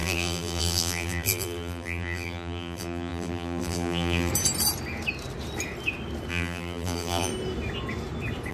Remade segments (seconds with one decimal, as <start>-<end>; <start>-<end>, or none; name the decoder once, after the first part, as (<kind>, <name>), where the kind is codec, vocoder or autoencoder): 0.0-4.3 (vocoder, BigVGAN v2); 6.3-7.3